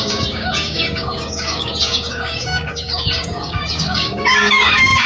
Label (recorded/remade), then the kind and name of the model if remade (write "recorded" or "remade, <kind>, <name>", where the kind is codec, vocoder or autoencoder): remade, codec, DAC